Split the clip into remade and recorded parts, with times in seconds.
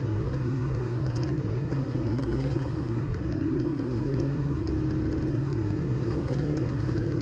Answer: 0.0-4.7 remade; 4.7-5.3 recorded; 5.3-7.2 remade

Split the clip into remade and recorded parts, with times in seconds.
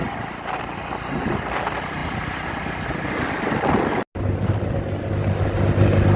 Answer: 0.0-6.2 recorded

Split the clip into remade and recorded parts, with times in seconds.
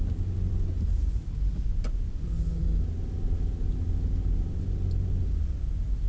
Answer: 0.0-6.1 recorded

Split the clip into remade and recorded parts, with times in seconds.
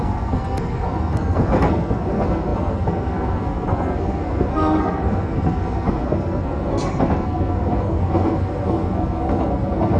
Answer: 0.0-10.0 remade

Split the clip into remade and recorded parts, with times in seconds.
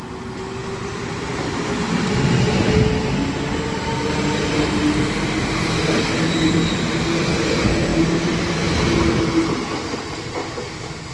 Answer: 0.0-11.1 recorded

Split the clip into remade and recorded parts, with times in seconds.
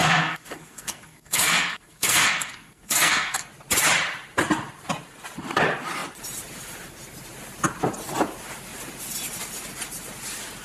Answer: 0.0-3.5 remade; 3.5-10.6 recorded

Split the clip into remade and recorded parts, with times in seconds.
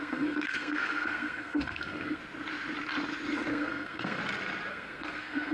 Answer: 0.0-2.2 remade; 2.2-3.5 recorded; 3.5-4.2 remade; 4.2-4.7 recorded; 4.7-5.5 remade